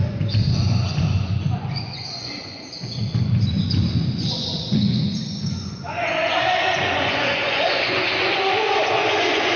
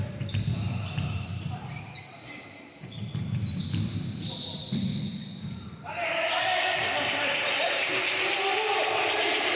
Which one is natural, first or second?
second